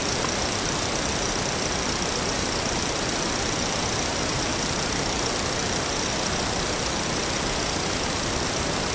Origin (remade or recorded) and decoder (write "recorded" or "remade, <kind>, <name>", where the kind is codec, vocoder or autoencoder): recorded